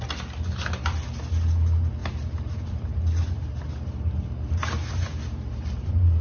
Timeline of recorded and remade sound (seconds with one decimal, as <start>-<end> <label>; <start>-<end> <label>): 0.0-2.0 recorded; 2.0-3.0 remade; 3.0-4.8 recorded; 4.8-6.2 remade